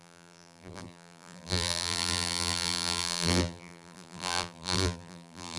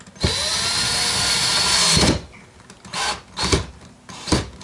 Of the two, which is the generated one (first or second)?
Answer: first